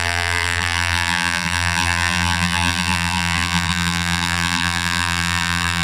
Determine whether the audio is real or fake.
fake